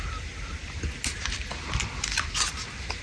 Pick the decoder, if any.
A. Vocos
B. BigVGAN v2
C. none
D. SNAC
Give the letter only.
C